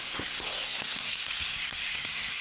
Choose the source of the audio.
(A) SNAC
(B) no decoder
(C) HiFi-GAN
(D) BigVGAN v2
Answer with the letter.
A